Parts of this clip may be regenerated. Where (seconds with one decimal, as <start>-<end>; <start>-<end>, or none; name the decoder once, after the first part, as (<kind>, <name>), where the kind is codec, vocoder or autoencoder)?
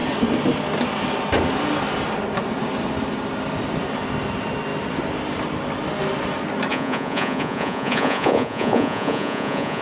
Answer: 6.7-9.8 (vocoder, Vocos)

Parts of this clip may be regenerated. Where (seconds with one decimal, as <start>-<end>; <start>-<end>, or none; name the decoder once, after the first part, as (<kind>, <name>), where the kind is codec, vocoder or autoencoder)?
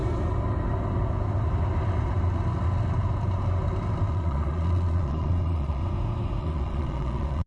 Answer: 4.1-5.8 (vocoder, Vocos); 6.4-7.5